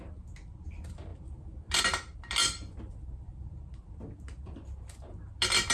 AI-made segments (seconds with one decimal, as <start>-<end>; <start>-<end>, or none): none